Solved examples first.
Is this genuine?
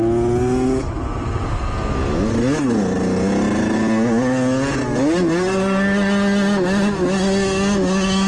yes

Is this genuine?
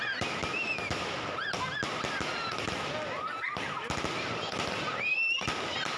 yes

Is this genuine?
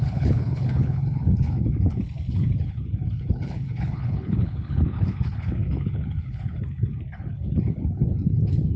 no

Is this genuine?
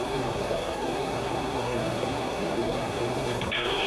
no